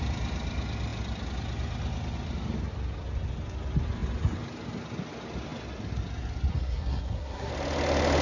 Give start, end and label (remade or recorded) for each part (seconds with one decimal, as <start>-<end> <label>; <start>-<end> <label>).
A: 0.0-6.5 recorded; 6.5-7.5 remade; 7.5-8.2 recorded